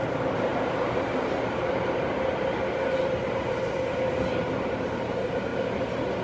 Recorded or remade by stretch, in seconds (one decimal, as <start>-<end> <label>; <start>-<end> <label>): 0.0-6.2 recorded